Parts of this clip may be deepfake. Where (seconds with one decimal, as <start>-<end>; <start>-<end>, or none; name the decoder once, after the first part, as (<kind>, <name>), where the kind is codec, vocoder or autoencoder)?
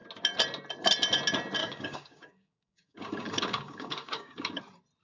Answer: 1.6-4.6 (codec, DAC)